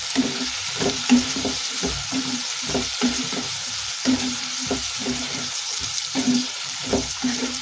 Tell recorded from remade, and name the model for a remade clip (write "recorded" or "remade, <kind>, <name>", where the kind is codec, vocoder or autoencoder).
remade, vocoder, BigVGAN v2